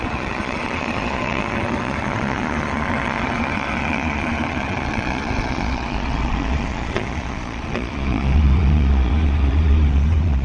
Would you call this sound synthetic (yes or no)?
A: yes